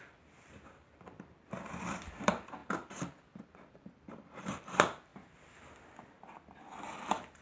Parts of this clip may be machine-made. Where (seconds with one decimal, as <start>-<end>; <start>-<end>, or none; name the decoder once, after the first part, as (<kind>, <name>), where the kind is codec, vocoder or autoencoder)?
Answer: 0.0-2.6 (vocoder, BigVGAN v2); 3.7-5.1